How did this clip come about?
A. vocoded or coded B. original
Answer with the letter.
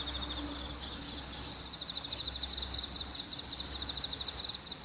B